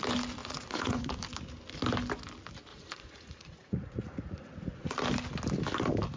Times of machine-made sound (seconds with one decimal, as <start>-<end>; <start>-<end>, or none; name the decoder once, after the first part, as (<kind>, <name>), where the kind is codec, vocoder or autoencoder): 0.4-1.2 (vocoder, Vocos); 2.7-4.9